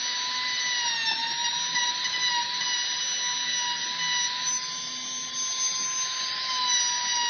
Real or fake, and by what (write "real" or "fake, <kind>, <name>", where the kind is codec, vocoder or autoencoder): real